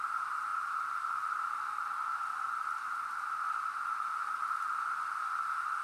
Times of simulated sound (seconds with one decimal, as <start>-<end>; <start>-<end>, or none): 4.2-5.1